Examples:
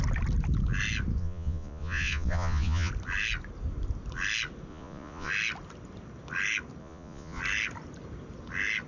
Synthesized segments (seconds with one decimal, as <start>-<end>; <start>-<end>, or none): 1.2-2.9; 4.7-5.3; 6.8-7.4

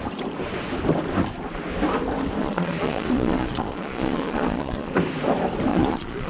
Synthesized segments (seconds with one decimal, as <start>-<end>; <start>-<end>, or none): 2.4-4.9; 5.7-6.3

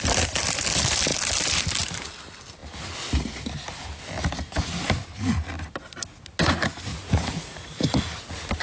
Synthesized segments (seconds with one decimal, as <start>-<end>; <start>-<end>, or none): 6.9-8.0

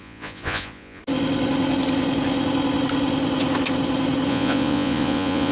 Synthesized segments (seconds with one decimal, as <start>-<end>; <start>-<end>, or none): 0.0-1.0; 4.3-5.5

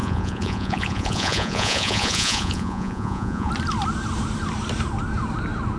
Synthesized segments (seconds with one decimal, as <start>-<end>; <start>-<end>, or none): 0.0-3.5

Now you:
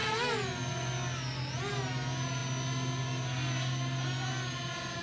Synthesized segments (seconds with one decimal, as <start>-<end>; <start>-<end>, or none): none

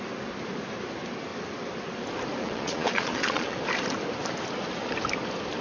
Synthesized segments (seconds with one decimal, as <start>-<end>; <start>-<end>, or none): 2.4-3.6

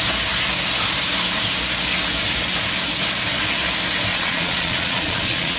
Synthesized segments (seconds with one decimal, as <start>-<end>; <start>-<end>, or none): 4.1-5.6